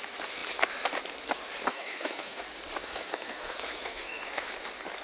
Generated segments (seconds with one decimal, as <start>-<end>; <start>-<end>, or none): 1.7-2.4; 2.8-4.5